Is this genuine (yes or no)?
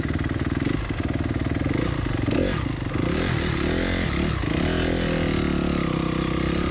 yes